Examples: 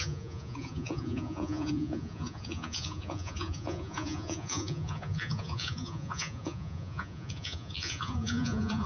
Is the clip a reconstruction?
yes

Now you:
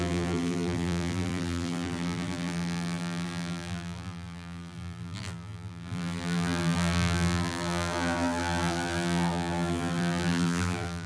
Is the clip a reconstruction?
yes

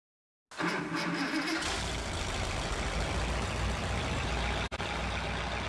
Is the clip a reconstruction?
no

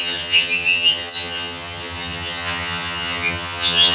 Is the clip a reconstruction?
yes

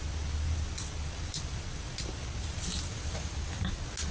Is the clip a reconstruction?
no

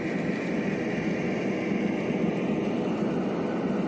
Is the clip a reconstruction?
no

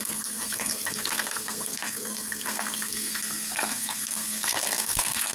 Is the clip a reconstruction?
yes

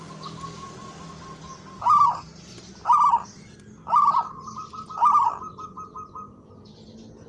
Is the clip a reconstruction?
no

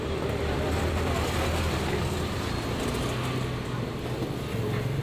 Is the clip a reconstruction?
no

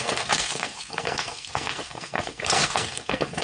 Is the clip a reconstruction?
yes